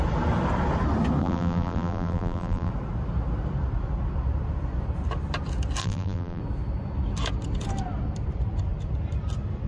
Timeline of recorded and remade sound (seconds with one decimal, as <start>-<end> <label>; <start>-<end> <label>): 0.0-1.2 recorded; 1.2-2.7 remade; 2.7-5.8 recorded; 5.8-6.4 remade; 6.4-9.7 recorded